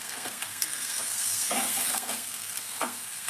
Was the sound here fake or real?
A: fake